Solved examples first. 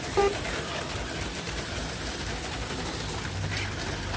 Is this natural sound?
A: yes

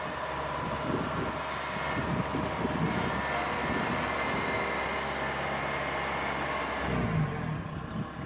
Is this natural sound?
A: yes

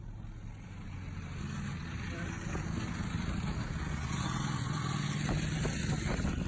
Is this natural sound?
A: yes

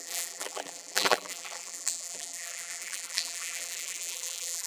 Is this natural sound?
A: no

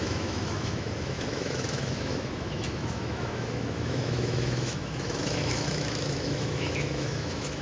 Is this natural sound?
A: no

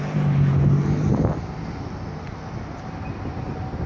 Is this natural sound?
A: yes